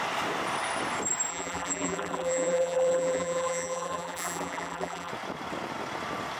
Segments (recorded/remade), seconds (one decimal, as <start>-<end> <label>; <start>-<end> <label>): 0.0-1.3 recorded; 1.3-5.1 remade; 5.1-6.4 recorded